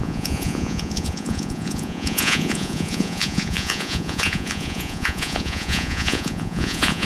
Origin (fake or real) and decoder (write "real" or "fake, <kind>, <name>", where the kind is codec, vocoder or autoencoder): fake, vocoder, Vocos